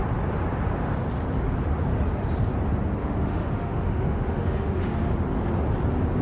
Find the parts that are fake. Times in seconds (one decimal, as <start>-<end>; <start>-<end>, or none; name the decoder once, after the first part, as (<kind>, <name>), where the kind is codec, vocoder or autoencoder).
3.0-5.1 (autoencoder, DAC-VAE)